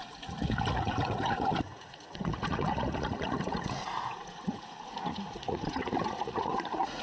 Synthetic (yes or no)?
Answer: yes